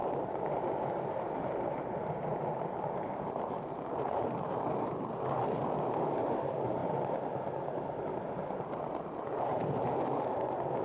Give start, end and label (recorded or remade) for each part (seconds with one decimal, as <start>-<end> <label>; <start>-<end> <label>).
0.0-6.8 remade; 6.8-8.0 recorded; 8.0-10.8 remade

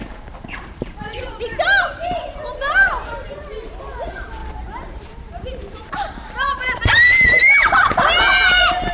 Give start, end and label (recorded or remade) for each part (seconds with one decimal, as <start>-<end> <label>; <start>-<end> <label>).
0.0-3.8 remade; 3.8-4.4 recorded; 4.4-8.9 remade